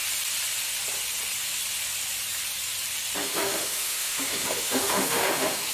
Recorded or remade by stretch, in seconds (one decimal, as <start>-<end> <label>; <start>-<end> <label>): 0.0-3.2 recorded; 3.2-5.7 remade